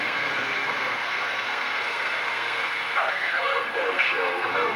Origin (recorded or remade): remade